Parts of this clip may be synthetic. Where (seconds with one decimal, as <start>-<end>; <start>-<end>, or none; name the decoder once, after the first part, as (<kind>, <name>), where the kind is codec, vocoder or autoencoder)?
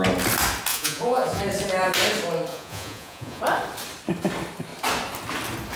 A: 0.7-1.4 (vocoder, Vocos); 2.5-3.4